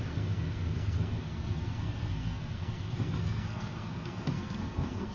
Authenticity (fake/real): fake